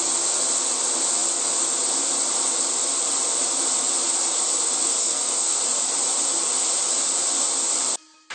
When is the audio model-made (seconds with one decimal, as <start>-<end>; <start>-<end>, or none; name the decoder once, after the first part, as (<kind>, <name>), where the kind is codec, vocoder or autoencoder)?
5.0-5.6 (codec, SNAC)